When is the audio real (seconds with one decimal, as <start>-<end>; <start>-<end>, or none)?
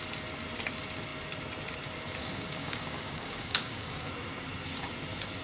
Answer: 0.0-2.2; 4.1-5.4